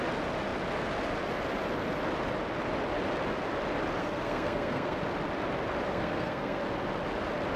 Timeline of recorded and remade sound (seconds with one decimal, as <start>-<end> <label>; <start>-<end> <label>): 0.0-4.0 recorded; 4.0-5.0 remade; 5.0-5.9 recorded; 5.9-6.6 remade; 6.6-7.6 recorded